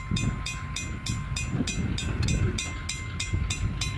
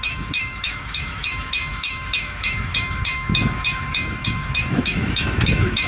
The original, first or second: first